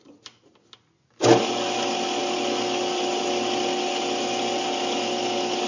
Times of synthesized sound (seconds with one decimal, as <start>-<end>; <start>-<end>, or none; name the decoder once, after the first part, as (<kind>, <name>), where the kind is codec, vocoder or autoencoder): none